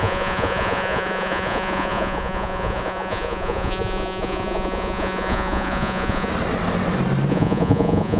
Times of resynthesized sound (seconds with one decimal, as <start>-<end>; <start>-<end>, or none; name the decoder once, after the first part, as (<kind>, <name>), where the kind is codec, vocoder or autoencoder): 0.0-6.3 (vocoder, Vocos); 7.3-8.2